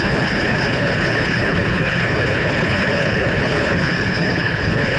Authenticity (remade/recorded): remade